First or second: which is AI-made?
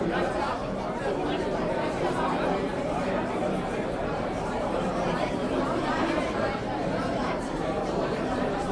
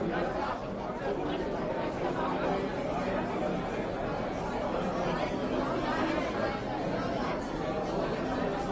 first